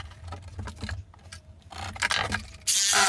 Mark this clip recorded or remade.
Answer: recorded